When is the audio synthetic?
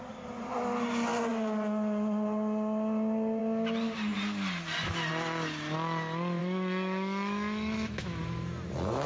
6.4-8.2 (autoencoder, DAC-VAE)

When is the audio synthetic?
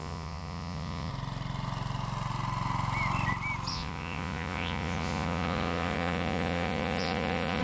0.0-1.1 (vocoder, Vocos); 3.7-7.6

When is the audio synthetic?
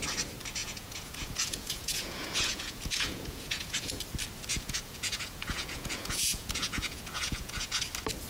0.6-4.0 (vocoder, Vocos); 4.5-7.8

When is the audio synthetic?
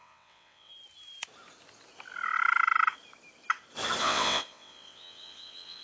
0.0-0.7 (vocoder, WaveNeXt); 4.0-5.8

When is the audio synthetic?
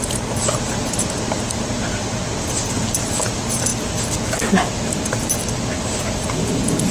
none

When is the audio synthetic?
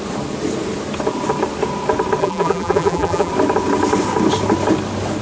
2.2-3.3 (vocoder, BigVGAN v2)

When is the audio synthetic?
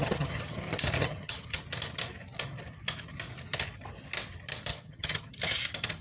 0.0-0.6 (vocoder, HiFi-GAN); 1.0-1.6; 4.7-5.3